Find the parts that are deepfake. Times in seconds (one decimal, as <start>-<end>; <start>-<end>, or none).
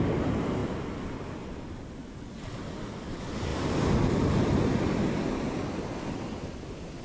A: none